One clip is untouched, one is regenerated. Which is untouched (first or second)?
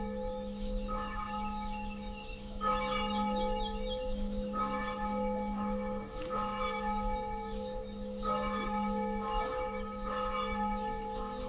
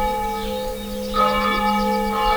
second